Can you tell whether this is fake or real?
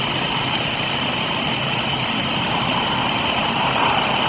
real